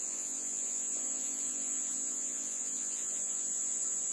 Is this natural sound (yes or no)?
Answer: no